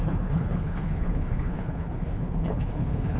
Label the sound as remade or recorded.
remade